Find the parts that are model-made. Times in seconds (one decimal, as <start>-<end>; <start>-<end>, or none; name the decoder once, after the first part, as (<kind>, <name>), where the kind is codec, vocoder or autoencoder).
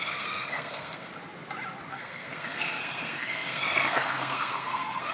0.0-1.1 (codec, SNAC); 1.9-5.1